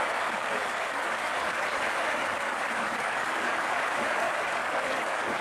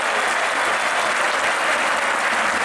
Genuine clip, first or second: second